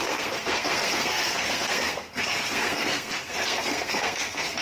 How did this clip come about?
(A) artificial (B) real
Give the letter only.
A